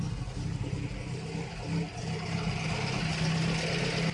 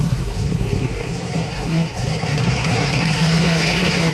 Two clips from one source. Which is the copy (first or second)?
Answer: second